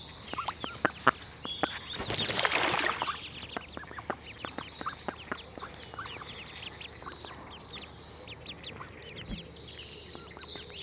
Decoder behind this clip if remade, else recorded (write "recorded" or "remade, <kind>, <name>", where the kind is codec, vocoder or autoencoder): recorded